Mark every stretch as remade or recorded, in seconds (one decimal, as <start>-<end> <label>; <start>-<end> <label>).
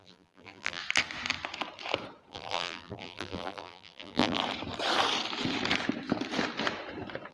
0.0-0.8 remade; 0.8-2.3 recorded; 2.3-4.4 remade; 4.4-7.3 recorded